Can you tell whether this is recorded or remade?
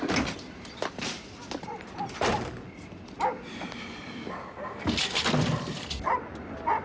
recorded